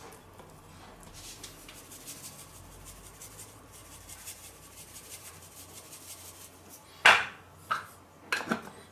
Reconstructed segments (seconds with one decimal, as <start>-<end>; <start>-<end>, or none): 3.8-5.3